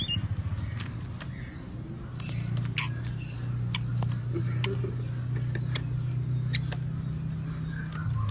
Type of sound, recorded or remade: recorded